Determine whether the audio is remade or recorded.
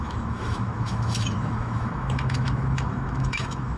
remade